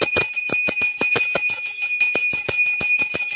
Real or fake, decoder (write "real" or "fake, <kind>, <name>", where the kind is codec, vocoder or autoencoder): real